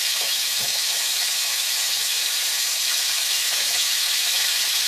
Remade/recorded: remade